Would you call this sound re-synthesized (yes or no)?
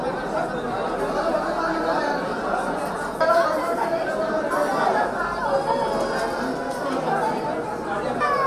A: no